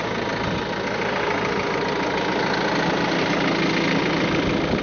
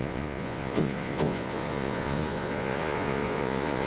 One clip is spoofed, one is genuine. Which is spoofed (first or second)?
second